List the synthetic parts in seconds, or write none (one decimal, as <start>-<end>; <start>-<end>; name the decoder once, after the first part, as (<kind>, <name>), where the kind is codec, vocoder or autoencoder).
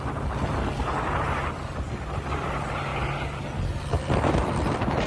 none